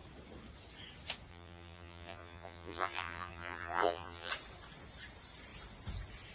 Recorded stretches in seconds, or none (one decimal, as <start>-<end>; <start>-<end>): 0.0-1.3; 4.3-6.3